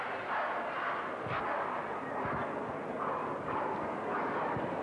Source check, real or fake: real